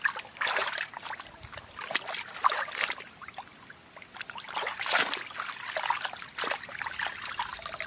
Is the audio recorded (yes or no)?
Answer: yes